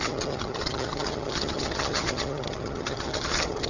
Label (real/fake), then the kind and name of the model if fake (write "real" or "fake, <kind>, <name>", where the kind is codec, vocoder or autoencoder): fake, vocoder, HiFi-GAN